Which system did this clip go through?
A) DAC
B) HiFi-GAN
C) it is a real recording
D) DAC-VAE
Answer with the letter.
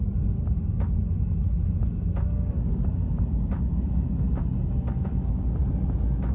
C